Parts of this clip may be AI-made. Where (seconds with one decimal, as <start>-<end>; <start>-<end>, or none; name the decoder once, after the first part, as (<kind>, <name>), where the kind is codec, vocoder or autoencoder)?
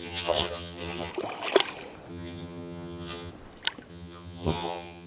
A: 0.0-1.1 (vocoder, HiFi-GAN); 2.1-3.3; 3.9-5.1